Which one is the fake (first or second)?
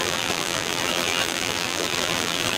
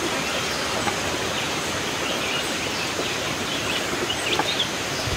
first